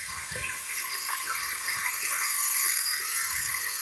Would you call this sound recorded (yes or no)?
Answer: no